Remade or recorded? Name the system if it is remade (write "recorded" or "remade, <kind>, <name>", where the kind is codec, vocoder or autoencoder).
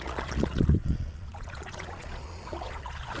remade, vocoder, Vocos